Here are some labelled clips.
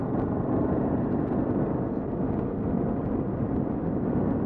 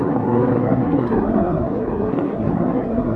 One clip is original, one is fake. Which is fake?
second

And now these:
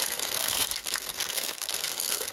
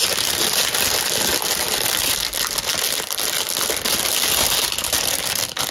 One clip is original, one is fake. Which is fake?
first